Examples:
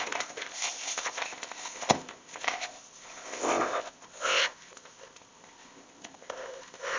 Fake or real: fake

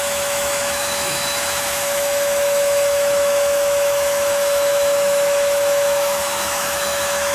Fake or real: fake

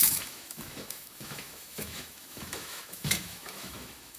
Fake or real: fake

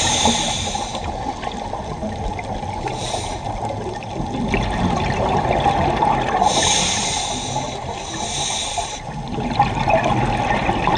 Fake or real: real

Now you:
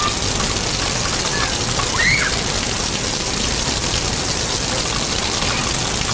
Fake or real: real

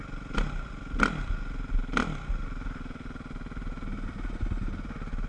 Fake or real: real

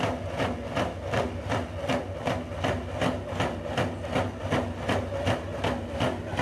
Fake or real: real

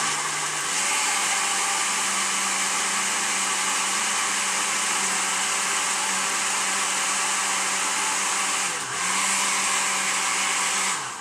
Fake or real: real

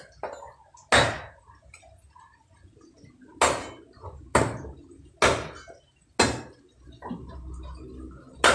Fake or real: real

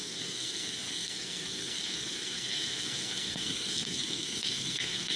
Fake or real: fake